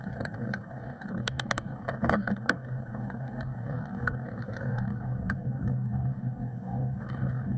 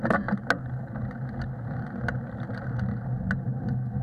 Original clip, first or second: second